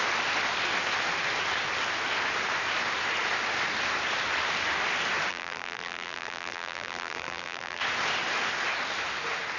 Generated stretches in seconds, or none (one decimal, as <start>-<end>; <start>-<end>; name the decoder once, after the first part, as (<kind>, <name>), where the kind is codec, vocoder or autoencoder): 5.3-7.8 (vocoder, BigVGAN v2)